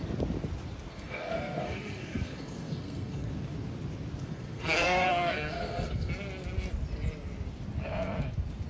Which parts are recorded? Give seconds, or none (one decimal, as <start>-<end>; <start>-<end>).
0.0-0.9; 3.3-4.2; 6.1-8.7

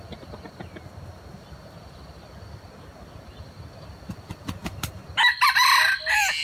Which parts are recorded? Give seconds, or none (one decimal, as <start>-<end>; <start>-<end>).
0.0-6.4

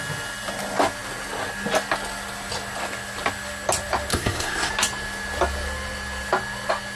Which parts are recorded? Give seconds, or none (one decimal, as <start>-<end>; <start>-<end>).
0.0-4.1; 4.7-7.0

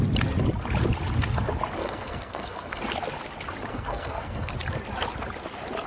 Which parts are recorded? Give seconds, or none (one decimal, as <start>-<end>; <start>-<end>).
0.0-1.8; 2.8-3.7; 4.5-5.9

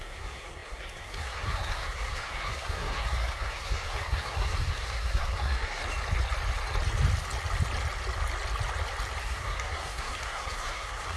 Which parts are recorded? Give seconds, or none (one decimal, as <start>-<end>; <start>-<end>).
5.8-9.2